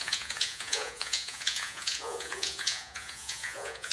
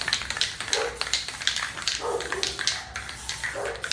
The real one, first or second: second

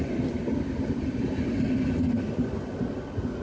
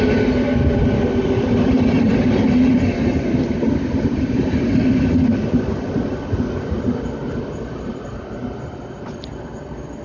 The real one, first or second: first